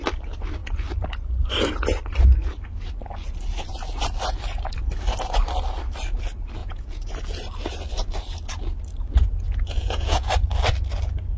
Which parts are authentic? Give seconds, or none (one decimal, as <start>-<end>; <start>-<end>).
0.0-6.6; 7.1-9.2; 10.3-11.4